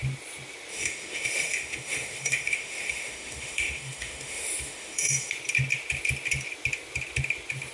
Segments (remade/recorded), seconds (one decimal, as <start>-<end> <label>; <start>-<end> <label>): 0.0-0.7 recorded; 0.7-5.3 remade; 5.3-7.7 recorded